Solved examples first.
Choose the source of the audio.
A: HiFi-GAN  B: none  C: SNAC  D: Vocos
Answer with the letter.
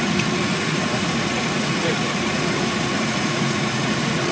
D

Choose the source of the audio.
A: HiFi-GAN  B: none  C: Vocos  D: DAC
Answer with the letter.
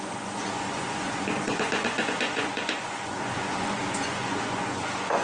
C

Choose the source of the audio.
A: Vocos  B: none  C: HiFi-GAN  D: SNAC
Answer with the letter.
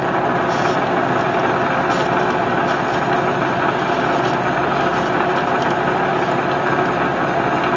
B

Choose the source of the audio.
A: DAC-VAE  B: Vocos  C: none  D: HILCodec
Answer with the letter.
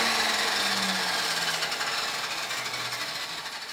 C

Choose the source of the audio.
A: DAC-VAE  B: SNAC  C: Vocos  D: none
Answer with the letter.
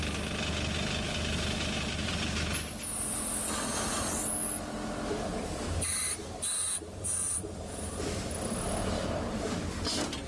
D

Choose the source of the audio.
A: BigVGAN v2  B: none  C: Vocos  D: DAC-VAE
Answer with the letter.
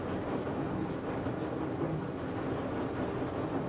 B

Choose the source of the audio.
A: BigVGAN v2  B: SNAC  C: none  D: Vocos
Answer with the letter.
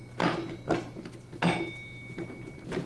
C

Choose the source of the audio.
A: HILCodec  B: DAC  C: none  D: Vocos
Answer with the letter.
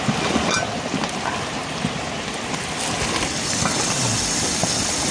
C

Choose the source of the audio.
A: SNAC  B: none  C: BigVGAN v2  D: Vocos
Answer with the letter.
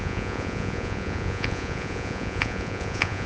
D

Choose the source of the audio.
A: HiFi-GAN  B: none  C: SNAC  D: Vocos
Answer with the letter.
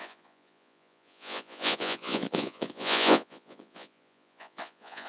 D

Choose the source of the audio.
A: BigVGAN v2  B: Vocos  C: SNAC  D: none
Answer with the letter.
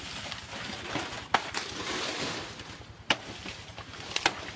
D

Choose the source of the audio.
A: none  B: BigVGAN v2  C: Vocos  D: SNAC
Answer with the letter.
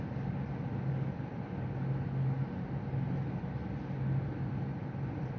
A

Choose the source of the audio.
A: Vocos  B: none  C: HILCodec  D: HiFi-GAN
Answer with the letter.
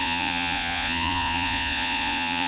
A